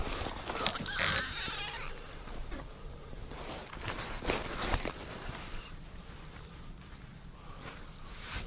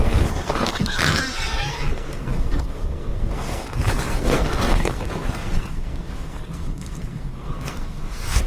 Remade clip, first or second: second